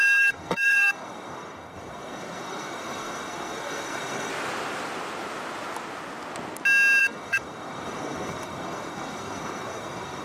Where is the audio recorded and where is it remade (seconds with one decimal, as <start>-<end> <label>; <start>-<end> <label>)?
0.0-4.3 remade; 4.3-7.0 recorded; 7.0-10.2 remade